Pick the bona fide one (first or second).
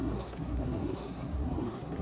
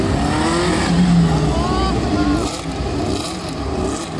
second